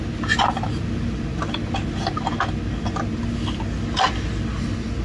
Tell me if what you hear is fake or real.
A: real